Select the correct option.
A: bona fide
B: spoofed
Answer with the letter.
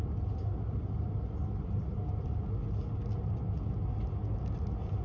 A